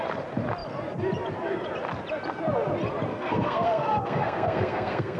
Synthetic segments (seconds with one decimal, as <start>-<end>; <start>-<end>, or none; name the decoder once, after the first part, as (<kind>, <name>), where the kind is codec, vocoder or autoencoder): 3.1-5.2 (codec, SNAC)